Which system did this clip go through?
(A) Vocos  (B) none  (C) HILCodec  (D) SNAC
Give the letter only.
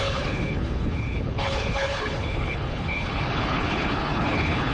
C